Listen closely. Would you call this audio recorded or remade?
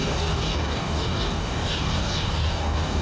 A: remade